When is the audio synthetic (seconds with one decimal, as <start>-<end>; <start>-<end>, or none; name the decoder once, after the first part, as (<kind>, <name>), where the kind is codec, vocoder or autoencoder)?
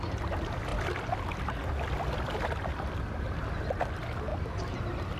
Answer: none